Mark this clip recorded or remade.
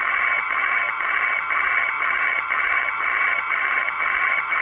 remade